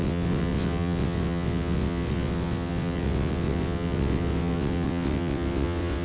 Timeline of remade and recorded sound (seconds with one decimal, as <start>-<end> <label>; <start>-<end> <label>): 0.0-6.0 remade